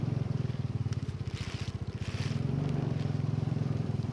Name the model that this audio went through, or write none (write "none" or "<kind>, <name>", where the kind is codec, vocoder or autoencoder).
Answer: vocoder, BigVGAN v2